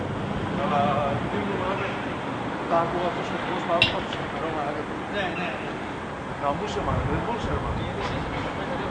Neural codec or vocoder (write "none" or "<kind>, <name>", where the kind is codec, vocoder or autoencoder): none